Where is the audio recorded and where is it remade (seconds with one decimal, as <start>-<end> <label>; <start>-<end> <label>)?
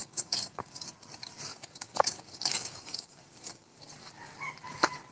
0.0-0.9 remade; 0.9-1.5 recorded; 1.5-3.8 remade; 3.8-5.1 recorded